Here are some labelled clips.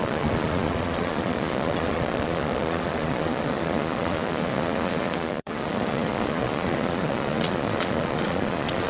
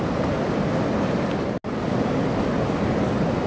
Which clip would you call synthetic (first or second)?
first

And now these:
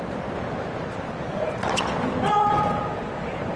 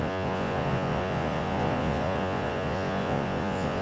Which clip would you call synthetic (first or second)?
second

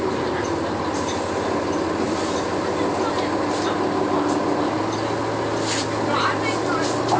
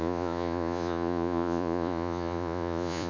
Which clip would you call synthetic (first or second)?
second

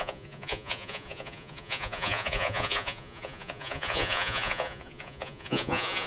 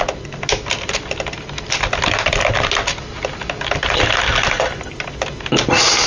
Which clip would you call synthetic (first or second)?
first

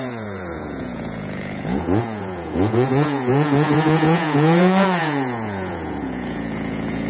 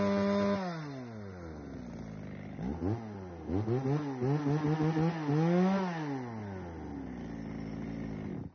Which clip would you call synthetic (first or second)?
first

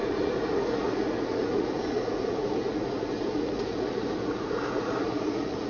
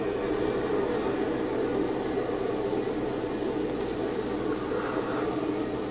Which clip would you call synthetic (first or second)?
first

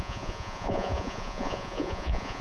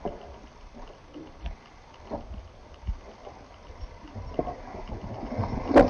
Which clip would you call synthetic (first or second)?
first